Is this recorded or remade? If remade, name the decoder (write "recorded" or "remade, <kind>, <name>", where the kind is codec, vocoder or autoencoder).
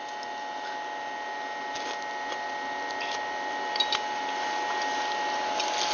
recorded